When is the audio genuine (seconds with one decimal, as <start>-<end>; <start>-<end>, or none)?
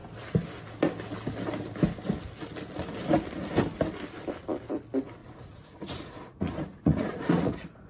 0.0-5.2